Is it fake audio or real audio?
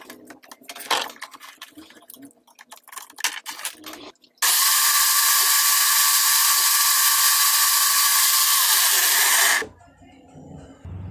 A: real